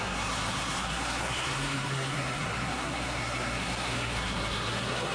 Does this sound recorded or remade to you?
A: remade